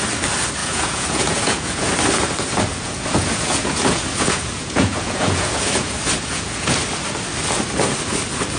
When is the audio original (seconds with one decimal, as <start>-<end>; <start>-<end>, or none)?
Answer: 0.0-0.6; 1.9-2.7; 6.8-8.6